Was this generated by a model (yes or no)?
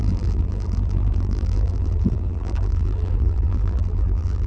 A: yes